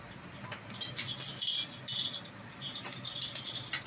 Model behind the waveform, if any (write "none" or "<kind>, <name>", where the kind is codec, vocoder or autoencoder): none